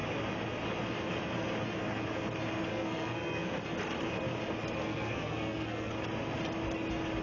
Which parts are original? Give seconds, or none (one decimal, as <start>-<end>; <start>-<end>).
0.0-2.7; 3.5-4.8; 5.9-7.2